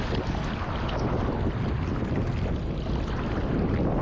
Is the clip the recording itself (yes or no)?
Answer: yes